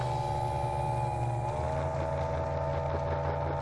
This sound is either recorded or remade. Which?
recorded